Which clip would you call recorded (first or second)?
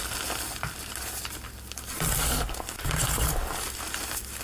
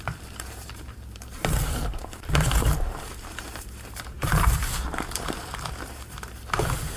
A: first